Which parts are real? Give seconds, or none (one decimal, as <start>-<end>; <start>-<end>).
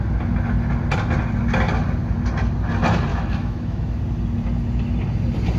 0.0-3.1; 4.0-5.6